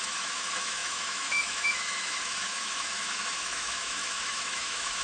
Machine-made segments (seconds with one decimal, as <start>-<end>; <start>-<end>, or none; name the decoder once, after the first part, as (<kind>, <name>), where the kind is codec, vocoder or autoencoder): 0.0-5.0 (autoencoder, DAC-VAE)

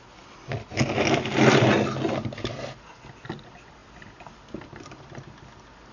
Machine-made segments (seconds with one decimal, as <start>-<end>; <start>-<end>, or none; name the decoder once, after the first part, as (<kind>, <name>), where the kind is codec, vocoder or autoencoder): none

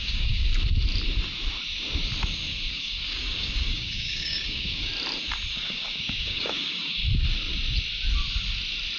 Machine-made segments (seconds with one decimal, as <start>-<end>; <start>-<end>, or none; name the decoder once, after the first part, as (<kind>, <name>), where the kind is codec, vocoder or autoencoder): 0.0-0.5 (codec, DAC); 2.7-4.9; 5.5-7.0

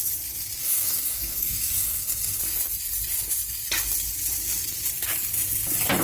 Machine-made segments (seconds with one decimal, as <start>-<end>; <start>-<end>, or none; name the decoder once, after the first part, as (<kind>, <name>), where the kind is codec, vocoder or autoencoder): 0.6-2.4 (codec, DAC)

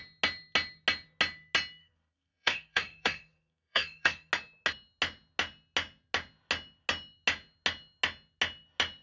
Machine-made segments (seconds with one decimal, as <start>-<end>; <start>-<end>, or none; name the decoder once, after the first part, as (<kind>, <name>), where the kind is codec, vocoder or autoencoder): 1.8-4.3 (codec, SNAC)

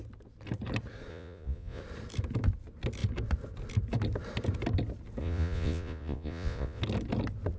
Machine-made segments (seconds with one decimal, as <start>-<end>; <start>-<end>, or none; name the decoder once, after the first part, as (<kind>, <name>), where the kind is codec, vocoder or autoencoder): 1.1-1.8 (vocoder, Vocos); 5.2-6.8